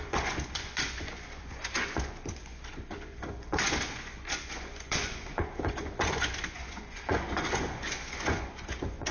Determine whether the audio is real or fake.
fake